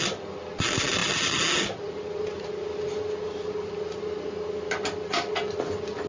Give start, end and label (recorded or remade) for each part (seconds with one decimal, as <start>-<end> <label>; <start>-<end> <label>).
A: 0.0-6.1 recorded